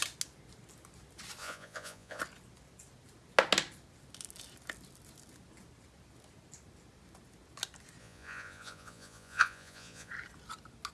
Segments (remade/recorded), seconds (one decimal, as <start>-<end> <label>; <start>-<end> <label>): 0.0-1.4 recorded; 1.4-2.2 remade; 2.2-8.0 recorded; 8.0-10.1 remade; 10.1-10.9 recorded